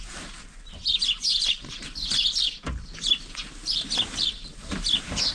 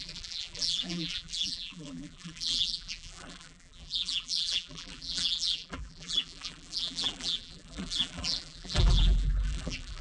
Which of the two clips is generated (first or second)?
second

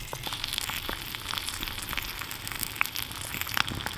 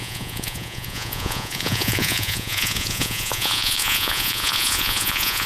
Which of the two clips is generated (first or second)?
second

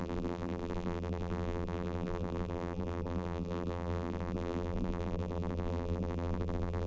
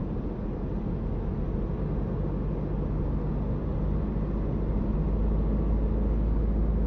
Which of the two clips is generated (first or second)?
first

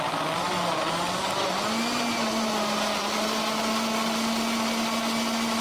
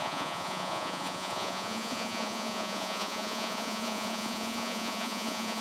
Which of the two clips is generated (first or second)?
second